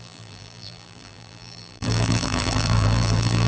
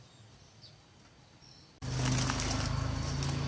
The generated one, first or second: first